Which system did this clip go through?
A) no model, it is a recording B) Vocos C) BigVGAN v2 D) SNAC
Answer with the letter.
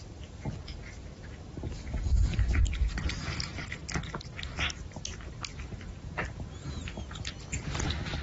A